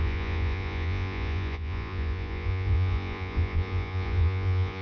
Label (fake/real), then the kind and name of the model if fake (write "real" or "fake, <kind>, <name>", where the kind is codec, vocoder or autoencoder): fake, vocoder, Vocos